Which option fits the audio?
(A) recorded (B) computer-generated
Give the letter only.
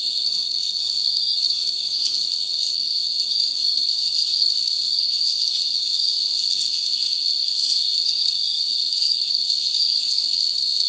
B